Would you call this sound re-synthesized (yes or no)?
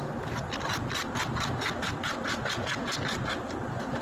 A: no